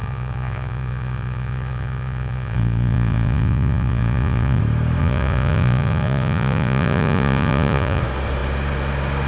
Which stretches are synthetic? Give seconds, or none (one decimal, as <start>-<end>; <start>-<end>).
0.0-4.6; 5.0-8.0